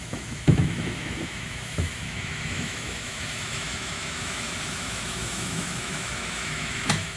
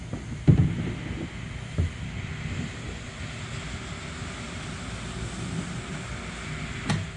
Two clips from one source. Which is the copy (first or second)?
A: first